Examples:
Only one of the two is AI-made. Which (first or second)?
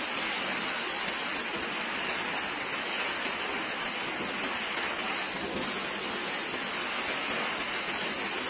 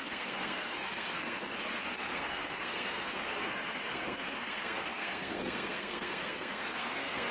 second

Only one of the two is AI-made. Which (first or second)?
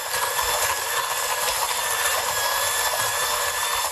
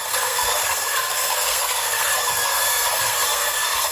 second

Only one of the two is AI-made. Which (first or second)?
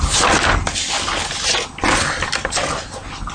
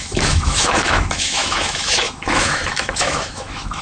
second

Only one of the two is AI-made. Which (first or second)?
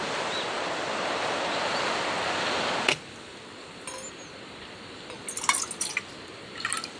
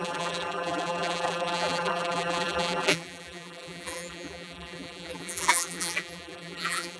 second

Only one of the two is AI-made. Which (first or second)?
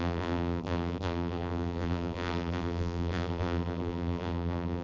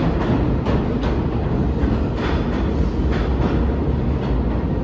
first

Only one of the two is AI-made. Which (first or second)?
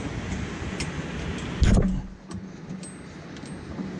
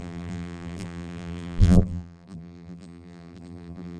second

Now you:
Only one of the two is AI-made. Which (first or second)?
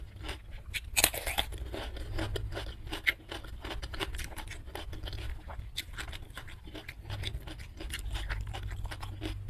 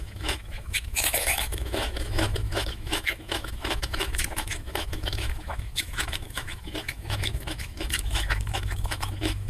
second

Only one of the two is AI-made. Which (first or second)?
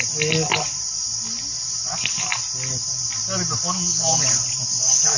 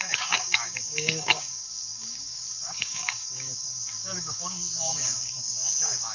second